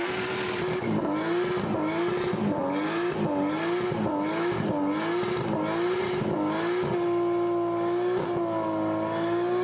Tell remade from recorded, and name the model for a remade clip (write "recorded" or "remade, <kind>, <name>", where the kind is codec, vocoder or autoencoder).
recorded